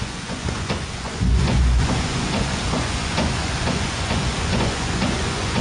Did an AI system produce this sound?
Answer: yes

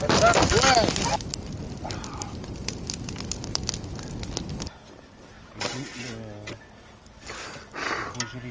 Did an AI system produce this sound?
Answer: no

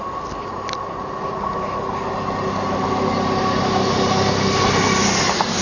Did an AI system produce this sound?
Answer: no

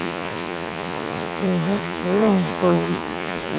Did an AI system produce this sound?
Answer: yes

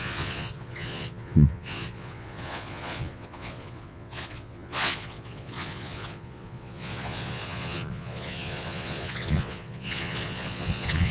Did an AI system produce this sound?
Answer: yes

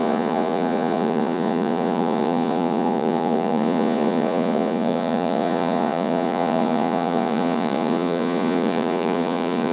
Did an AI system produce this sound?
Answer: yes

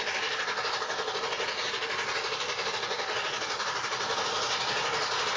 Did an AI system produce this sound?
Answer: no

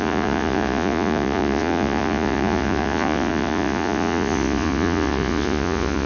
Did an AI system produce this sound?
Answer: yes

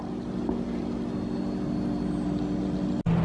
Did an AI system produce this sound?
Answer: no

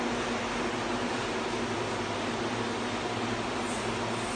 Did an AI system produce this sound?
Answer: no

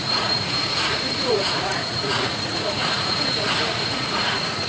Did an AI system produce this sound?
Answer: yes